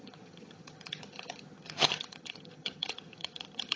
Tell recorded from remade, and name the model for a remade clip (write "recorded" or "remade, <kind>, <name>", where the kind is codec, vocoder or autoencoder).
remade, vocoder, HiFi-GAN